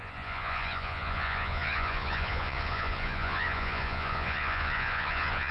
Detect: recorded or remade remade